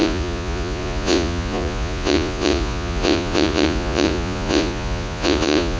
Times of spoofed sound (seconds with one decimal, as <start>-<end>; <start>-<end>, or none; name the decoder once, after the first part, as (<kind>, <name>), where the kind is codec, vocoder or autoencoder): 0.0-5.8 (vocoder, Vocos)